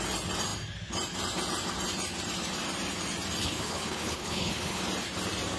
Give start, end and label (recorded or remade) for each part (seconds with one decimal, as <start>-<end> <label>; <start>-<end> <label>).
0.0-3.4 recorded; 3.4-4.8 remade; 4.8-5.6 recorded